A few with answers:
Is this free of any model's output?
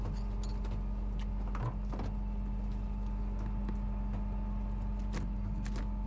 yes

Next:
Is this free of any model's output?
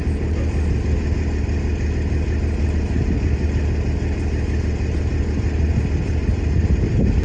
yes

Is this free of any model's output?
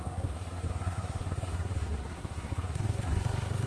no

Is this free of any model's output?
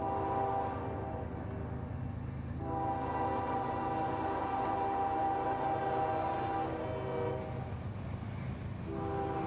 yes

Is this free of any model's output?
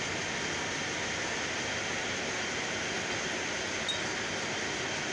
yes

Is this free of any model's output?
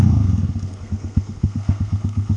no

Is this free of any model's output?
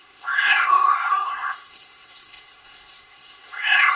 no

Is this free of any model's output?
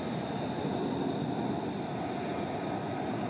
yes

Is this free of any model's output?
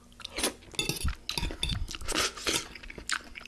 yes